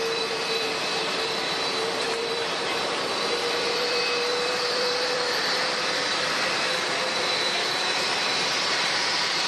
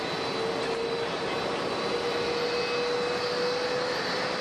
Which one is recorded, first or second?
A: second